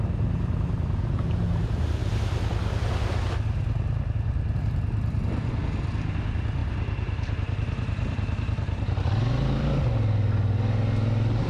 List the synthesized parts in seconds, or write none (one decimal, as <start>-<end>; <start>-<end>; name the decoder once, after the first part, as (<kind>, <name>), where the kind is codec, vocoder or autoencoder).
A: 6.6-9.8 (vocoder, BigVGAN v2)